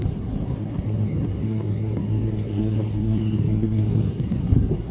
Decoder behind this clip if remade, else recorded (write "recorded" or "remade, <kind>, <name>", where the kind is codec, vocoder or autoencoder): remade, codec, SNAC